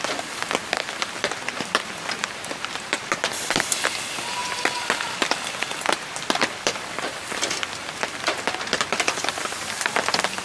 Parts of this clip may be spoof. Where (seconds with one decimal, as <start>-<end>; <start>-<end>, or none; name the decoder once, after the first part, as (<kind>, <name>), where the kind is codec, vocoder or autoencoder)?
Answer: 0.0-10.4 (vocoder, BigVGAN v2)